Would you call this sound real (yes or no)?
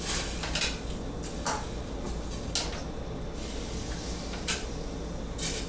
yes